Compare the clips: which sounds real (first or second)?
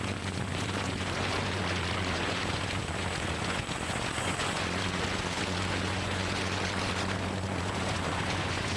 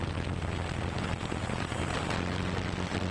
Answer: second